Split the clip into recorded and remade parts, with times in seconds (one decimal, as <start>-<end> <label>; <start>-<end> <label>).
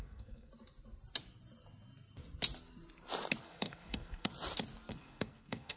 0.0-0.5 remade; 0.5-3.4 recorded; 3.4-4.3 remade; 4.3-4.9 recorded; 4.9-5.8 remade